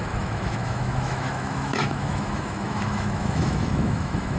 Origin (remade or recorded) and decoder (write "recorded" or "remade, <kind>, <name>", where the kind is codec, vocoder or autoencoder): remade, autoencoder, DAC-VAE